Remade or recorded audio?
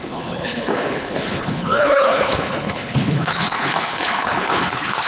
remade